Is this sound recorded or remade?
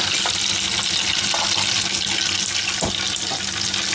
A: recorded